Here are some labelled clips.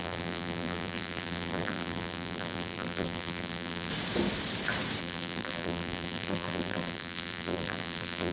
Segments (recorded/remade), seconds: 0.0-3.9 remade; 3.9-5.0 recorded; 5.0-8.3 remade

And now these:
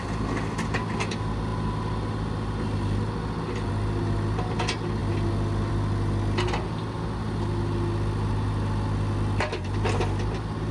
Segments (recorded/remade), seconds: 0.0-10.7 recorded